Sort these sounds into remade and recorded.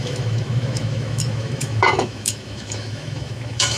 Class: remade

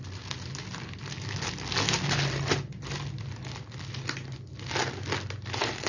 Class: recorded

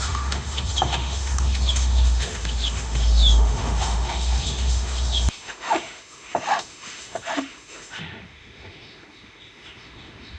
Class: remade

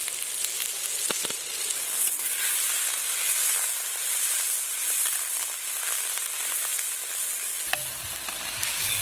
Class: recorded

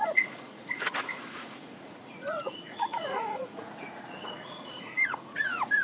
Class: remade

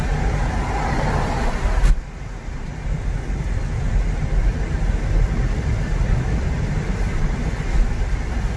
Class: recorded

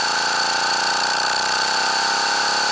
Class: recorded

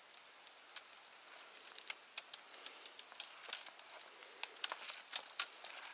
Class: recorded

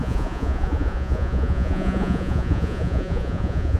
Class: remade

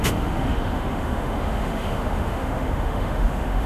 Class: remade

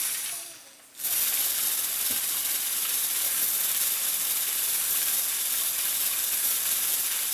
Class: recorded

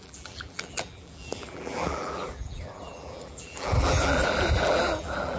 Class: remade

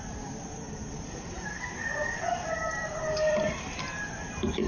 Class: remade